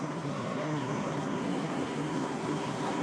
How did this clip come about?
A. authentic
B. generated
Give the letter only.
B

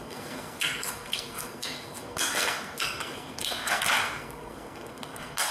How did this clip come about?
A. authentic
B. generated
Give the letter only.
B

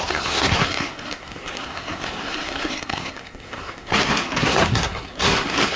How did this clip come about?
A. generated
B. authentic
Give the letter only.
A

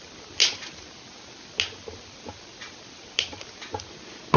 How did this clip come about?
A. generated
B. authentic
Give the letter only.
B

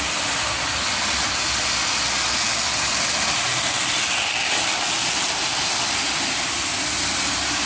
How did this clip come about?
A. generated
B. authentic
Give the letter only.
B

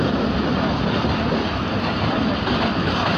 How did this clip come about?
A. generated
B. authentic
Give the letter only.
B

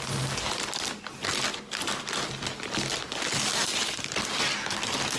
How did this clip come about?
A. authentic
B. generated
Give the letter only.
A